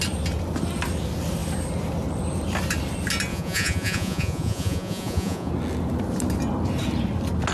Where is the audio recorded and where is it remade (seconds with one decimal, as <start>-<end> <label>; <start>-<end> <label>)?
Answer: 0.0-3.3 recorded; 3.3-5.5 remade; 5.5-7.5 recorded